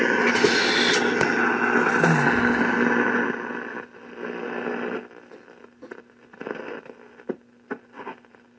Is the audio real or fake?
real